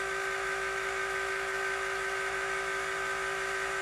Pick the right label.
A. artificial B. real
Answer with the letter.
A